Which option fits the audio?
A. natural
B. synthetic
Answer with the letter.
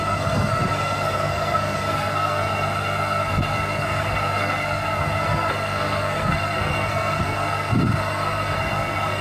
B